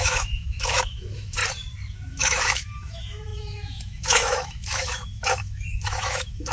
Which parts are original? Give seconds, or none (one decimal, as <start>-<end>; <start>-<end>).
1.4-2.1